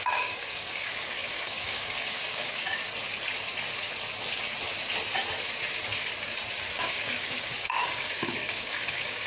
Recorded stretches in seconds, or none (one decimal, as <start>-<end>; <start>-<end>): 2.8-6.7